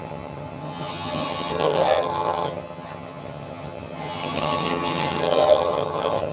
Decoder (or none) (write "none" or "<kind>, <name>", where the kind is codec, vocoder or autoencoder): vocoder, HiFi-GAN